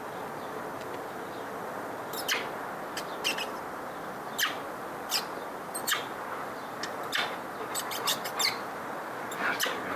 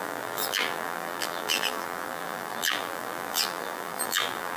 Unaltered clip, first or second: first